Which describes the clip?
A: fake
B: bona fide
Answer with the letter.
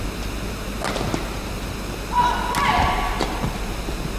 B